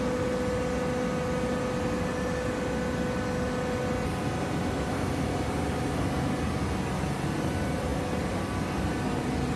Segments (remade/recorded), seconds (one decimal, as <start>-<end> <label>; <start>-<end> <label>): 0.0-9.6 recorded